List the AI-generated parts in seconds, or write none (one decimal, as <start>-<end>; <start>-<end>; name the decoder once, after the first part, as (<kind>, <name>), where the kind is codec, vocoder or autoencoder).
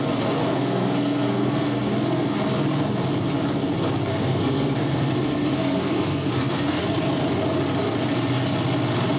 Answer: 0.4-1.9 (codec, SNAC); 4.1-6.8